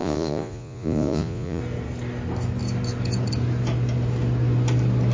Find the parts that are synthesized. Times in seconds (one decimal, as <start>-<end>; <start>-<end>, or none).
0.0-1.6